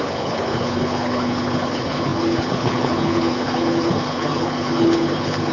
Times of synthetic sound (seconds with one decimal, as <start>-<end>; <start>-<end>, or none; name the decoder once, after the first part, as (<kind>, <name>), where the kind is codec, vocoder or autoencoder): 0.0-5.5 (codec, HILCodec)